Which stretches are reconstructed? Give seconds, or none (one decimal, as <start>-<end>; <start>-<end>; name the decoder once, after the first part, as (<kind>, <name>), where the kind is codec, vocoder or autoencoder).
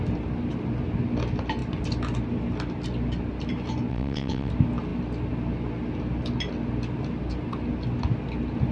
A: 3.9-4.5 (vocoder, WaveNeXt)